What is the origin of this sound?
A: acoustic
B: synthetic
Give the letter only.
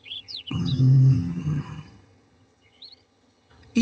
B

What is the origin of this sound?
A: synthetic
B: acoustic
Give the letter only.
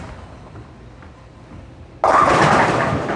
B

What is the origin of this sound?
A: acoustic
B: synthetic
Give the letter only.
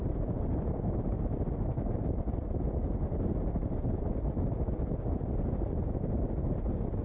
A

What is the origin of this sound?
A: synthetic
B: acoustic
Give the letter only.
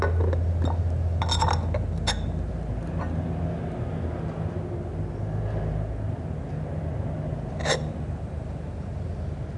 B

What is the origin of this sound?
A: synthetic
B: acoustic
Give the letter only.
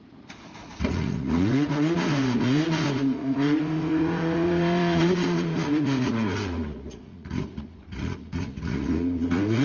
A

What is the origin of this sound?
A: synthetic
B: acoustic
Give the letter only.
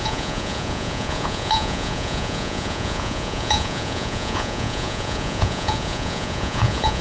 A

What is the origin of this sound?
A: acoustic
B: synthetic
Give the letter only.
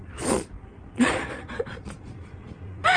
B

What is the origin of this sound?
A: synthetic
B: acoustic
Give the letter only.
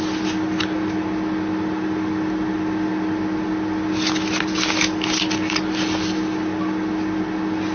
B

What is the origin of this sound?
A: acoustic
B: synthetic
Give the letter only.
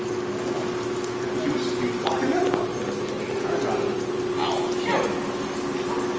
A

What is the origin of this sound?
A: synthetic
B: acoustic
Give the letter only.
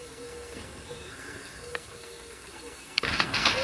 A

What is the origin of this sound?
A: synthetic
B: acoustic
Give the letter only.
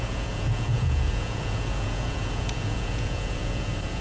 A